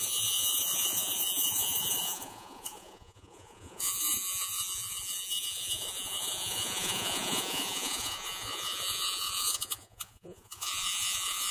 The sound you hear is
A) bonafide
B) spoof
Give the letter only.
B